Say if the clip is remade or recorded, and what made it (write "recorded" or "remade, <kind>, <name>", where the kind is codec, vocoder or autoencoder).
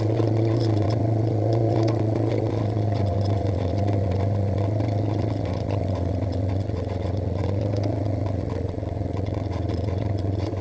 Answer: remade, vocoder, WaveNeXt